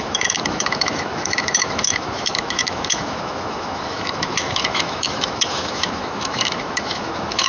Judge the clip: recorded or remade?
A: remade